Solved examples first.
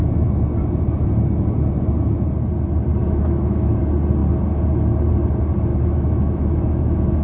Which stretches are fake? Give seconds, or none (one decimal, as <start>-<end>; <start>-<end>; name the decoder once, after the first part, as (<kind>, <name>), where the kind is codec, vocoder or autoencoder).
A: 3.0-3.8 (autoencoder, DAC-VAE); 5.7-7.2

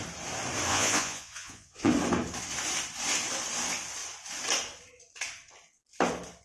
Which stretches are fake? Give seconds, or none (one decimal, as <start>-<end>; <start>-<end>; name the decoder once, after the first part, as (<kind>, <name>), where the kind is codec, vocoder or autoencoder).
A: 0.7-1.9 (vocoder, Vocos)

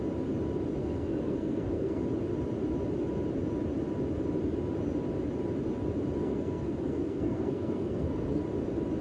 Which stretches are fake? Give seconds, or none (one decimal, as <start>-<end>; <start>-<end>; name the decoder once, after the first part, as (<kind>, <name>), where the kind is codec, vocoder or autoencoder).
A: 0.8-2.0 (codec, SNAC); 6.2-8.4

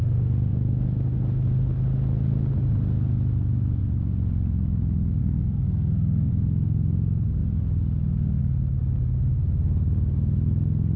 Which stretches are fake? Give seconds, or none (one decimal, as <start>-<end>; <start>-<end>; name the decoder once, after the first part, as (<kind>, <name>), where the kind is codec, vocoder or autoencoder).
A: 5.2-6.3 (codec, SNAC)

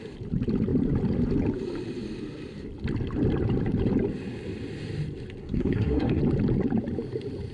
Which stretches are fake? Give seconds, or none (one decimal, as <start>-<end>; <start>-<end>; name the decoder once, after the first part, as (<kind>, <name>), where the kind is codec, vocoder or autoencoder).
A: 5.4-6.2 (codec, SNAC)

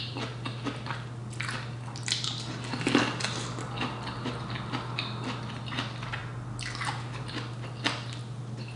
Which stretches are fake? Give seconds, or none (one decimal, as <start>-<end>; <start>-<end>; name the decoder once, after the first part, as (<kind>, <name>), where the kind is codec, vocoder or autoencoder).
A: none

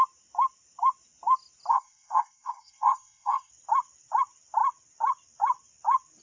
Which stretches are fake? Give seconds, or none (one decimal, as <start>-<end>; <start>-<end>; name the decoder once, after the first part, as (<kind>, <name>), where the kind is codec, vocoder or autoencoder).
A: 1.7-3.5 (codec, SNAC)